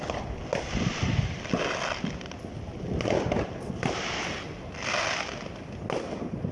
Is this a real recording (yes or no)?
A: yes